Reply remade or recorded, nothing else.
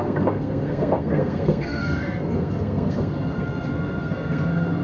remade